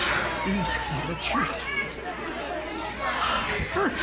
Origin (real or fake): real